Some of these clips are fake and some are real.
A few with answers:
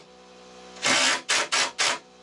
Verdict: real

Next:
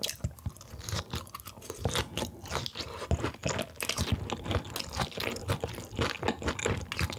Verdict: real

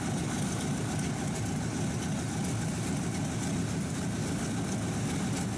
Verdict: real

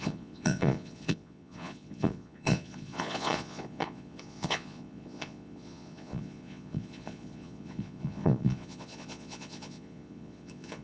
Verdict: fake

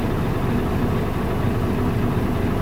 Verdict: real